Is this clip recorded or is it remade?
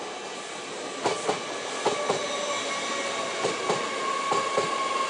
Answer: recorded